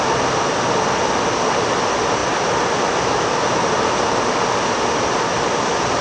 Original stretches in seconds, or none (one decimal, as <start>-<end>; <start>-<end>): 0.0-2.2